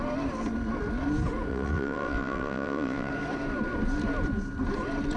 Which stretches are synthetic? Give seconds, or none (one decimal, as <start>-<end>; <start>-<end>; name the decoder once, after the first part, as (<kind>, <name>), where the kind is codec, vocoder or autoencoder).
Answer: 1.5-3.1 (vocoder, WaveNeXt)